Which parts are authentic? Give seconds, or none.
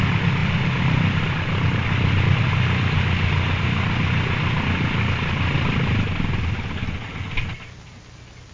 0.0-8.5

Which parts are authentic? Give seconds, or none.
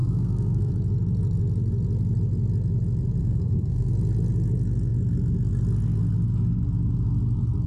0.7-3.2; 3.9-7.7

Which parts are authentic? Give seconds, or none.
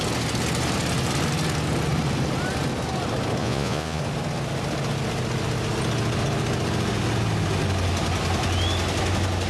0.0-3.4; 4.0-9.5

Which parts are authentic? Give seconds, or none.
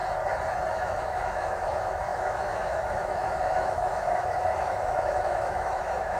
0.0-0.7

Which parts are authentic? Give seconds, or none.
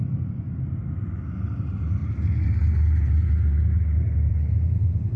0.0-5.2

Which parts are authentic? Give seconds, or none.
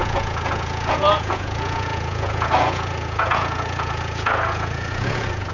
none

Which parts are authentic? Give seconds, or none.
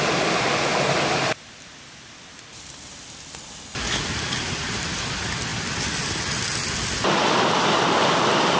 0.0-8.6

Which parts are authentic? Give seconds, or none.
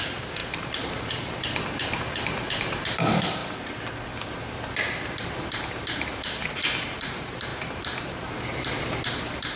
3.4-5.2; 7.5-8.0